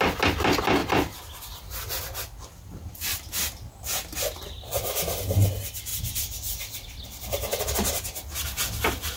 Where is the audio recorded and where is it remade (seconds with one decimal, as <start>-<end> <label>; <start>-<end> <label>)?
0.0-9.2 recorded

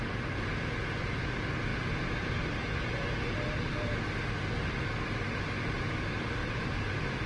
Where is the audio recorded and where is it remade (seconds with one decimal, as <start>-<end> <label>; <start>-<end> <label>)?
0.0-1.7 recorded; 1.7-4.2 remade; 4.2-6.4 recorded; 6.4-7.3 remade

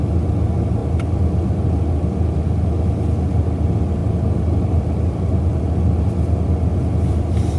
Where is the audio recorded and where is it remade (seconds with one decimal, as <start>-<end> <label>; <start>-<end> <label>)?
0.0-0.8 recorded; 0.8-1.7 remade; 1.7-4.0 recorded; 4.0-5.3 remade; 5.3-6.7 recorded; 6.7-7.6 remade

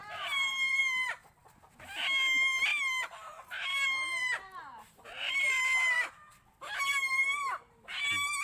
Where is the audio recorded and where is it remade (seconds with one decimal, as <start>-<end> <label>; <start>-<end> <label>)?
0.0-0.8 remade; 0.8-2.7 recorded; 2.7-7.6 remade; 7.6-8.4 recorded